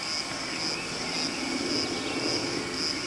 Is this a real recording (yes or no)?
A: yes